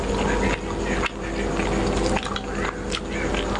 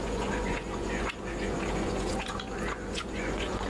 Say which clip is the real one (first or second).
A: first